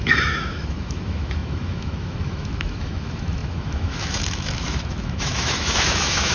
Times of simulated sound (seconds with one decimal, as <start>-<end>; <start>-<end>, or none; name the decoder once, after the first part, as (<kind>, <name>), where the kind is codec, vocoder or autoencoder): 0.0-6.3 (autoencoder, DAC-VAE)